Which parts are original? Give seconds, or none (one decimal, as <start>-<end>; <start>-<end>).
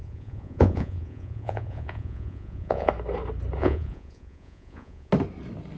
2.9-3.6; 5.1-5.8